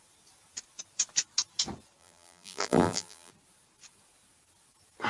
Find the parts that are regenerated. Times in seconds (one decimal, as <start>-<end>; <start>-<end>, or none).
2.0-3.3